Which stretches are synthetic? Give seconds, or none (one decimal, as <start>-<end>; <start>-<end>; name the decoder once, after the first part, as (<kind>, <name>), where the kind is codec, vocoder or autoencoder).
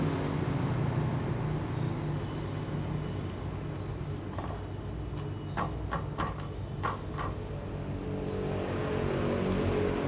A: 3.9-4.5 (vocoder, BigVGAN v2)